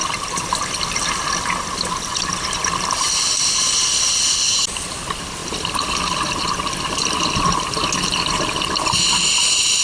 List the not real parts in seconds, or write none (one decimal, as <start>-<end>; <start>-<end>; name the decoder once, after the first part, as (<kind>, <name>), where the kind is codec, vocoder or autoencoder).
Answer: none